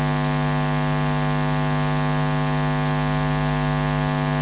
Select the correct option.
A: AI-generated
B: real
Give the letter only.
B